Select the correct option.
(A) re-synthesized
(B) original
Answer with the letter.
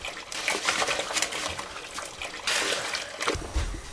B